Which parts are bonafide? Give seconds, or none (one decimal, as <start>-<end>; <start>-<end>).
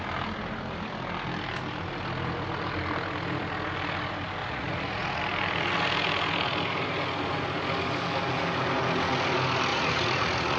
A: 0.0-4.4; 5.2-9.7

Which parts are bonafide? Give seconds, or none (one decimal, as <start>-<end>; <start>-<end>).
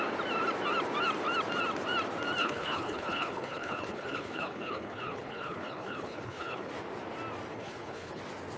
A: 0.0-2.4; 6.7-7.5; 8.2-8.6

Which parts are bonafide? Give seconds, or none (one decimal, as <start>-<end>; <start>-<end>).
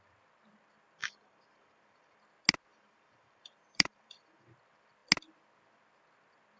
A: 0.0-1.0; 2.2-2.7; 4.5-6.6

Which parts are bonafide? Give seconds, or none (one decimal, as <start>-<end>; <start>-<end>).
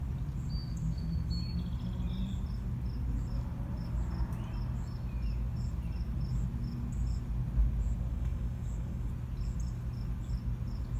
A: 0.0-0.6; 1.3-8.1; 9.1-11.0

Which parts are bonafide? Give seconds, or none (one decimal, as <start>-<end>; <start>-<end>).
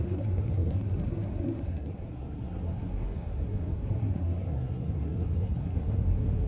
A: none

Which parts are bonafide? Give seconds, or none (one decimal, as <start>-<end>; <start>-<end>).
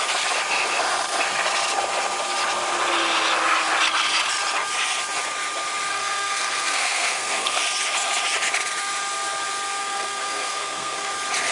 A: 0.0-5.9; 7.6-9.8; 11.1-11.5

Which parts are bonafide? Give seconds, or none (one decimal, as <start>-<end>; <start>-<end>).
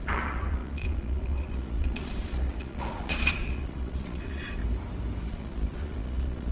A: 4.6-5.2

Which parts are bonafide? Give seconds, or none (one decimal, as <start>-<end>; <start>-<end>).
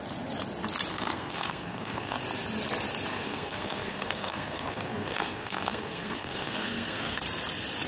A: 0.0-0.9; 2.2-3.1; 7.2-7.9